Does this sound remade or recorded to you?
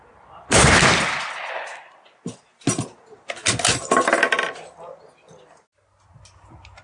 recorded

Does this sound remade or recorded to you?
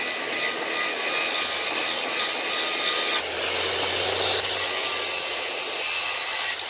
recorded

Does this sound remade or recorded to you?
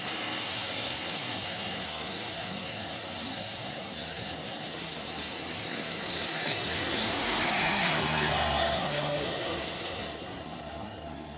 remade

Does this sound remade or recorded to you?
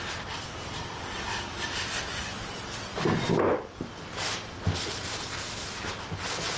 recorded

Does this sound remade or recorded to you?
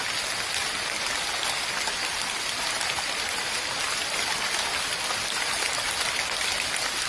recorded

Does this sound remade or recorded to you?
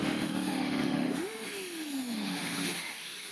remade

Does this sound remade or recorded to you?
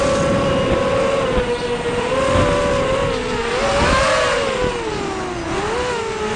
recorded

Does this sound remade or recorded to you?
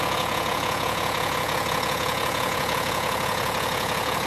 remade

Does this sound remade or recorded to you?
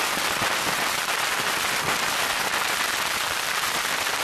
remade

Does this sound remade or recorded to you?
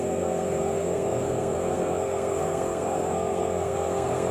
remade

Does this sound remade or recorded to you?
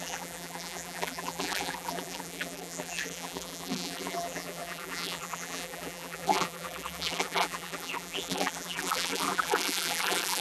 remade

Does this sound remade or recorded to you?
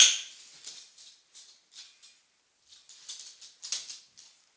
recorded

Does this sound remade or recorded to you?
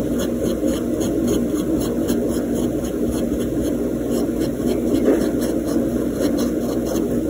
recorded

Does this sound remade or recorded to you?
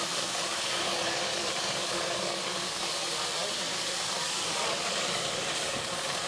remade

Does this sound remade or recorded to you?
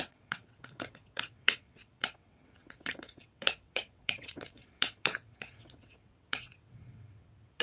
remade